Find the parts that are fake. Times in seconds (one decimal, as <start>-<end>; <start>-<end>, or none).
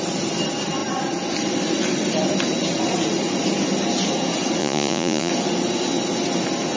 4.6-5.3